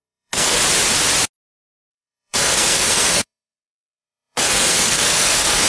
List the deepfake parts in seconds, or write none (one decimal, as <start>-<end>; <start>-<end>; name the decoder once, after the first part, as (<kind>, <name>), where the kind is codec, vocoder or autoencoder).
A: 0.0-0.6 (codec, SNAC); 1.9-5.7